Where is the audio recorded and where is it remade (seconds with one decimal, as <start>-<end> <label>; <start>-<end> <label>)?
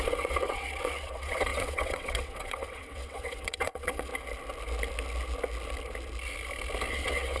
0.0-4.1 remade; 4.1-6.9 recorded; 6.9-7.4 remade